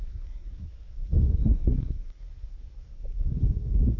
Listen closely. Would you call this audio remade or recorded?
remade